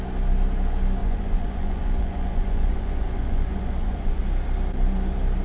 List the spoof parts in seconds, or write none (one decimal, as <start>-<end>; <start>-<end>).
1.0-4.2